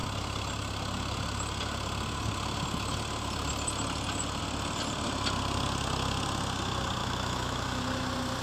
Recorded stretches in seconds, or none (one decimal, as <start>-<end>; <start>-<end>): 0.0-7.0; 7.8-8.4